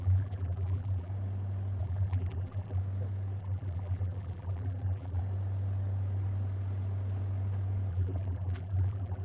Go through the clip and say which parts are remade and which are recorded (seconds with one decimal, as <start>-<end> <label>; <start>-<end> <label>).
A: 0.0-1.1 remade; 1.1-1.8 recorded; 1.8-2.8 remade; 2.8-3.4 recorded; 3.4-5.2 remade; 5.2-7.9 recorded; 7.9-9.2 remade